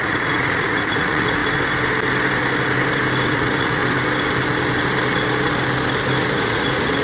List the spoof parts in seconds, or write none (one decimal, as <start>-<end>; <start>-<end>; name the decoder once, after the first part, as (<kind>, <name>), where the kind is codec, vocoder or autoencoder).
0.0-1.4 (vocoder, Vocos); 3.3-3.8; 6.3-7.0